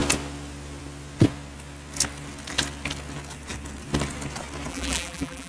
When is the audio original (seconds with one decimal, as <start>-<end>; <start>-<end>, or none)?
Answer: 0.0-4.7